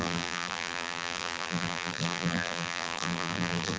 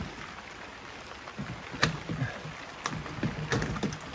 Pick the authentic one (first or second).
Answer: second